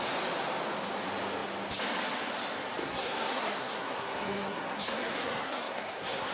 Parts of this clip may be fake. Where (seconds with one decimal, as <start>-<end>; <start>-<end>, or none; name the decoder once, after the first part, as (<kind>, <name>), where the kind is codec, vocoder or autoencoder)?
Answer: 2.8-6.3 (codec, SNAC)